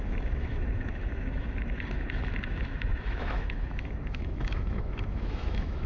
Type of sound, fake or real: fake